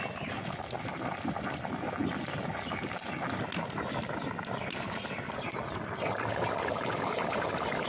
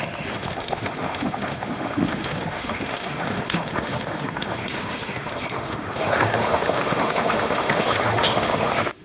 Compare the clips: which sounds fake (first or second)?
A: second